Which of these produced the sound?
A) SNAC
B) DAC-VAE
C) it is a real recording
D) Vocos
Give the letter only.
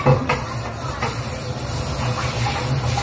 C